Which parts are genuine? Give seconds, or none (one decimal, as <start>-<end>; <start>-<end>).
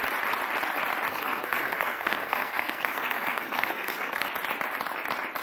0.0-1.1; 4.3-5.4